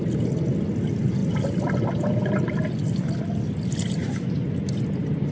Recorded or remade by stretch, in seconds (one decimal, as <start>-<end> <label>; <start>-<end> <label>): 0.0-5.3 recorded